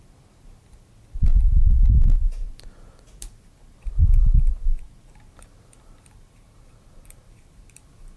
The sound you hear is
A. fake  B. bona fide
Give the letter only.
B